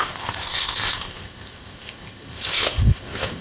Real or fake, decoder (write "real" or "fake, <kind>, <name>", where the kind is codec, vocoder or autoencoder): fake, codec, ZipCodec